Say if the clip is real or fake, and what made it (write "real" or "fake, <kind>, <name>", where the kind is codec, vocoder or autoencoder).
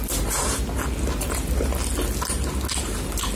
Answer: real